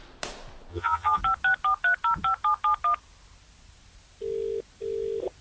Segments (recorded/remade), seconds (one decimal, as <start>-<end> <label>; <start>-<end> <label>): 0.0-0.7 recorded; 0.7-1.2 remade; 1.2-5.4 recorded